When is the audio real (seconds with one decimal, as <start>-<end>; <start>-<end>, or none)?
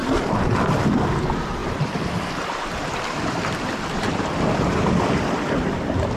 0.0-0.8